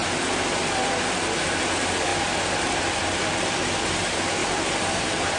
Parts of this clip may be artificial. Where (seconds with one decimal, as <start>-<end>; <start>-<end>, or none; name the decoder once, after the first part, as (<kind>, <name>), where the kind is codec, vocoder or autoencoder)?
0.0-0.6 (vocoder, BigVGAN v2); 4.4-5.4